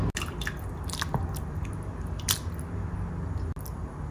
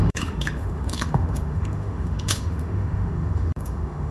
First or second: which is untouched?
first